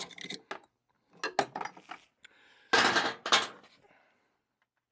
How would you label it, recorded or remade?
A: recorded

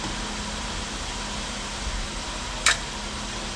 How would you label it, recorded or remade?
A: recorded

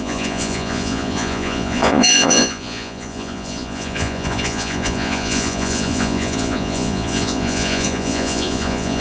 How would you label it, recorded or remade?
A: remade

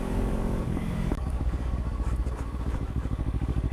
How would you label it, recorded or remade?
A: remade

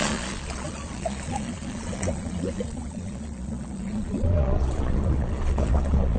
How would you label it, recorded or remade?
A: remade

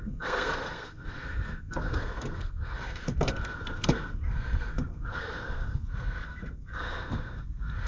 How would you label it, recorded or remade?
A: remade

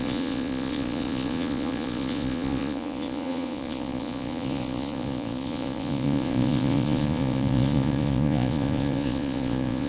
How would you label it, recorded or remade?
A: remade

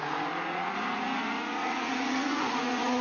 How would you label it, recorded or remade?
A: remade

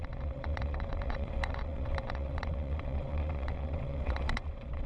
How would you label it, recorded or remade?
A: remade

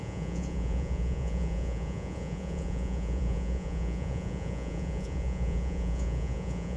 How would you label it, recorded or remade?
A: remade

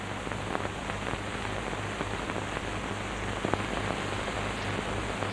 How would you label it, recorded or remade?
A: recorded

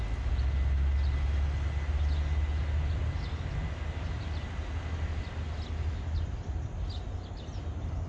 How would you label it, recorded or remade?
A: recorded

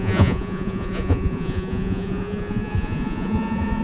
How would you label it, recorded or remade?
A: remade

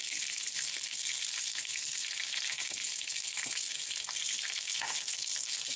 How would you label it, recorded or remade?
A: remade